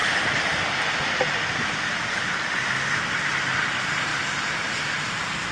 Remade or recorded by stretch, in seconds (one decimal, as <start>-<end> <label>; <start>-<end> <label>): 0.0-5.5 recorded